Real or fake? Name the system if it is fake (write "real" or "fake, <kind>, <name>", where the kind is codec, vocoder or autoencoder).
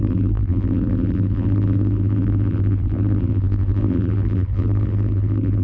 fake, vocoder, BigVGAN v2